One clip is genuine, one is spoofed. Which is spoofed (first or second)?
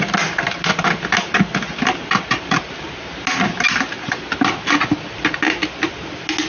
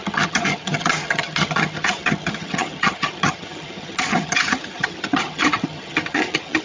second